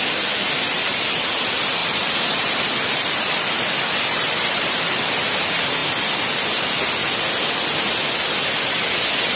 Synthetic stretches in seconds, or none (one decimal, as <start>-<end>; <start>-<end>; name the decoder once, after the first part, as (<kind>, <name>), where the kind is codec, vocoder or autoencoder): 1.8-5.0 (vocoder, BigVGAN v2)